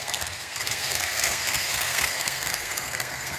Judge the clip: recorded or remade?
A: remade